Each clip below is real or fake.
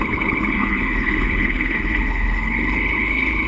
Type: fake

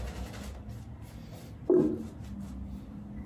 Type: real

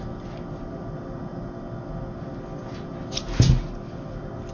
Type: real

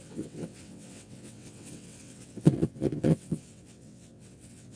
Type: fake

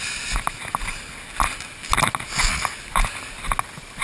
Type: real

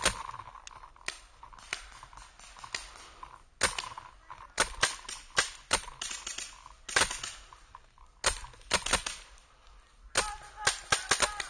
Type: real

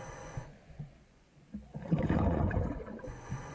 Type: fake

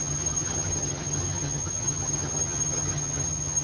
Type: fake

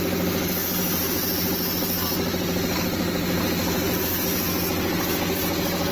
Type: real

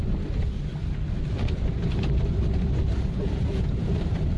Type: real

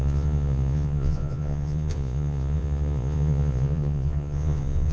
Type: fake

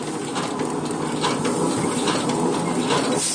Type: real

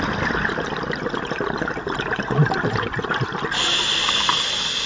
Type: real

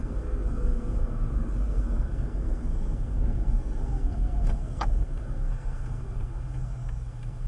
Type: fake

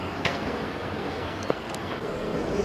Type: fake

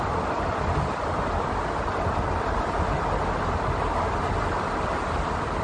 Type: real